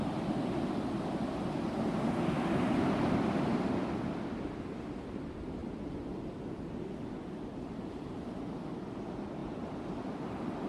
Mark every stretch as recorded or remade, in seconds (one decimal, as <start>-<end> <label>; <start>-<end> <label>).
0.0-3.5 recorded; 3.5-4.2 remade; 4.2-5.6 recorded; 5.6-6.4 remade; 6.4-9.4 recorded; 9.4-10.1 remade; 10.1-10.7 recorded